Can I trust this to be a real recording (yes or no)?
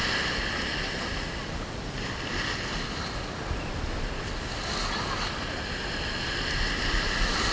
yes